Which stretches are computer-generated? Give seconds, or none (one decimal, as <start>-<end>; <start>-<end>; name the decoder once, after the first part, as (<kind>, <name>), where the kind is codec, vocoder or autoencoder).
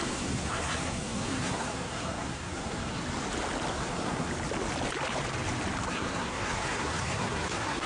0.0-3.0 (codec, SNAC); 3.7-4.3; 5.9-7.9